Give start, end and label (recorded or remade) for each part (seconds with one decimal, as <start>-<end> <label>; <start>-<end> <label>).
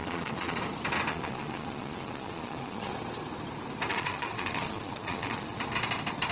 0.0-0.6 remade; 0.6-1.1 recorded; 1.1-2.9 remade; 2.9-3.9 recorded; 3.9-5.6 remade; 5.6-6.3 recorded